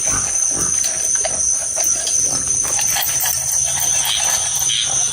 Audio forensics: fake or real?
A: real